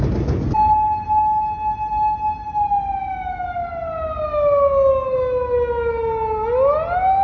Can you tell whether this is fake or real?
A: real